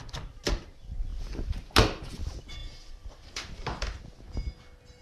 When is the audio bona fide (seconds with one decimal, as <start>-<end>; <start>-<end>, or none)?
0.0-1.1; 1.7-2.6; 4.0-5.0